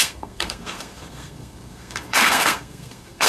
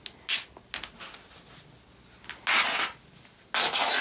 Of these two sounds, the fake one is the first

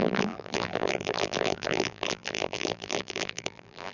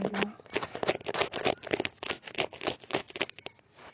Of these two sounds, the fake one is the first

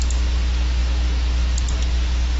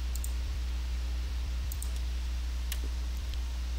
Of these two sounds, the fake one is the second